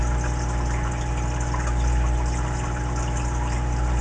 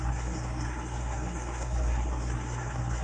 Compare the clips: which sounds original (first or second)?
first